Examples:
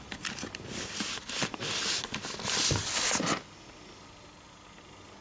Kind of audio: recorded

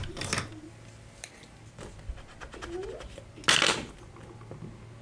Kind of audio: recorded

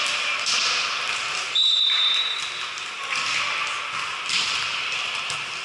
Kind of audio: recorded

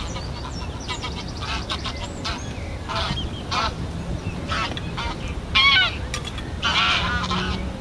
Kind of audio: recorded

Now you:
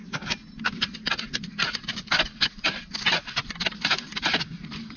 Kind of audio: recorded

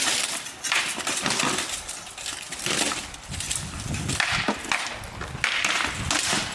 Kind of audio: recorded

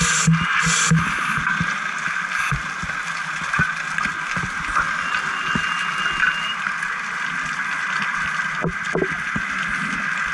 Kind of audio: recorded